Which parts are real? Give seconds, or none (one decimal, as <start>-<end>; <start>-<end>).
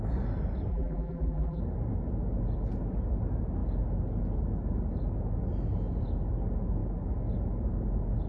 0.0-0.7; 1.6-8.3